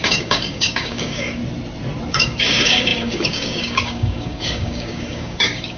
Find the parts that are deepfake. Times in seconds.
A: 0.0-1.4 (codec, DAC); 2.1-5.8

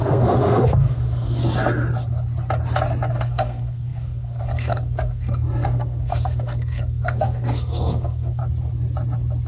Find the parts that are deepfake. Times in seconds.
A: 0.0-1.4 (codec, SNAC); 3.1-8.4

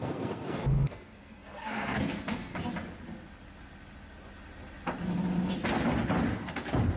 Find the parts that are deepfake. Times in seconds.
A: 0.0-2.5 (codec, SNAC)

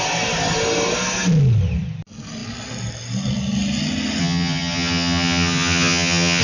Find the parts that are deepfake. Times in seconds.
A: 4.2-6.4 (vocoder, HiFi-GAN)

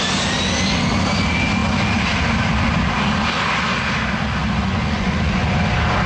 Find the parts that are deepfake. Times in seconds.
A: 4.6-5.5 (vocoder, Vocos)

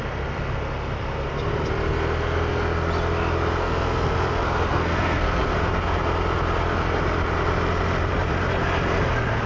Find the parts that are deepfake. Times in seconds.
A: 3.6-5.5 (codec, SNAC)

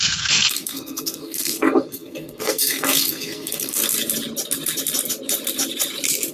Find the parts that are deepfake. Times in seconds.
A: 0.0-3.8 (codec, SNAC)

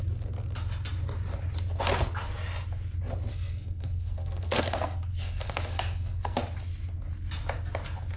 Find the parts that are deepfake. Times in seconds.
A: 3.3-6.4 (codec, SNAC)